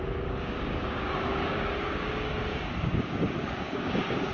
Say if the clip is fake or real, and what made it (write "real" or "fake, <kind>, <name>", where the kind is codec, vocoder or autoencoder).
fake, codec, DAC